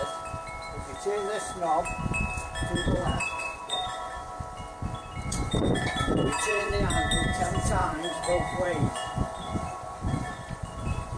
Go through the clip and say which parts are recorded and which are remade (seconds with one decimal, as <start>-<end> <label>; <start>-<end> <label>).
0.0-2.8 recorded; 2.8-4.3 remade; 4.3-5.2 recorded; 5.2-6.7 remade; 6.7-7.8 recorded; 7.8-11.2 remade